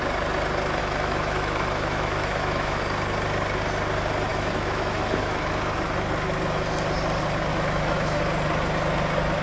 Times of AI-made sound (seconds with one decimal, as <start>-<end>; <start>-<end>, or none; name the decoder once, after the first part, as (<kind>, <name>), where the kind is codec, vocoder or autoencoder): 0.8-2.8 (autoencoder, DAC-VAE); 4.3-5.5; 7.5-8.2